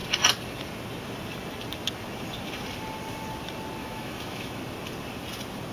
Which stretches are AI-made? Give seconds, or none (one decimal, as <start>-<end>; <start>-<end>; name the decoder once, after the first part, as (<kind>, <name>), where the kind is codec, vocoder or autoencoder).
3.8-4.6 (autoencoder, DAC-VAE)